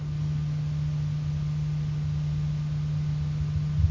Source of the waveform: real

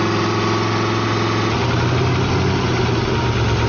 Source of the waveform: real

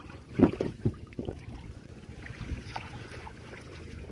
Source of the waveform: fake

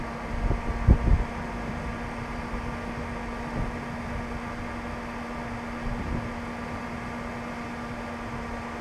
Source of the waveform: real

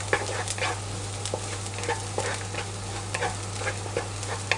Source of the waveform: real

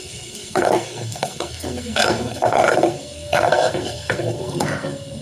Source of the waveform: fake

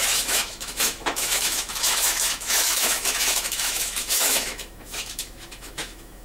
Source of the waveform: fake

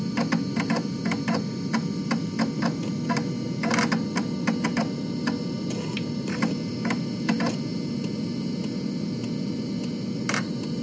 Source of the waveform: real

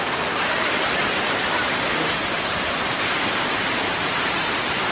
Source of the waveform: fake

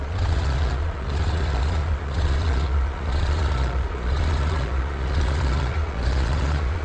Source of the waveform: fake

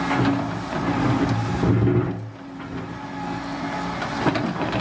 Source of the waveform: real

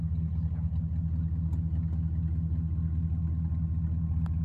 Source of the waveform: real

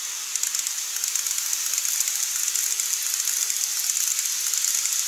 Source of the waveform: real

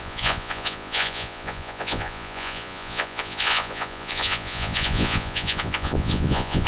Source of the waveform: fake